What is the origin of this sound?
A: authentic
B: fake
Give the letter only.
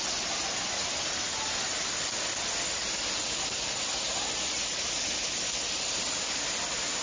A